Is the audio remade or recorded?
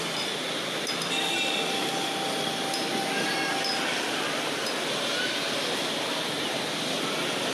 recorded